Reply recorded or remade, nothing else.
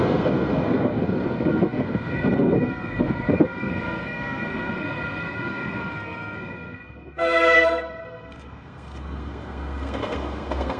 remade